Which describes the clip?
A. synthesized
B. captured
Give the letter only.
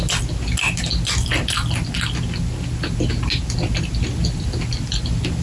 B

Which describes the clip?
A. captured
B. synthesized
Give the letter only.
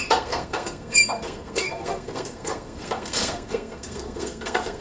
B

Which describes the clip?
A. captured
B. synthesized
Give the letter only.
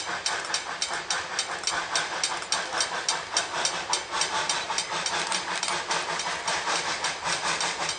A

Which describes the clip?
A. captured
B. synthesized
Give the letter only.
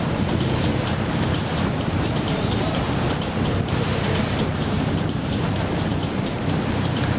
B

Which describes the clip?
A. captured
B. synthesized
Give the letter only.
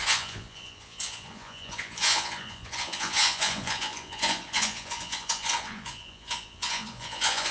B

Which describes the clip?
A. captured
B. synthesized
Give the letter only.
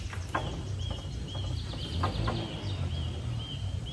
A